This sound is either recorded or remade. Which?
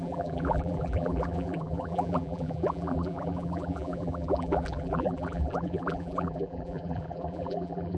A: remade